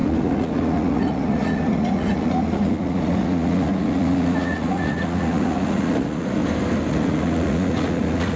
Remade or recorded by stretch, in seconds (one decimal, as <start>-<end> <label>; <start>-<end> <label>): 0.0-6.4 remade; 6.4-6.9 recorded; 6.9-8.4 remade